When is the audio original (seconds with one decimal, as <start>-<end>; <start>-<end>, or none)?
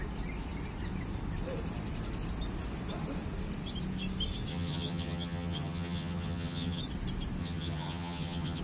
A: 0.0-4.5; 6.8-7.4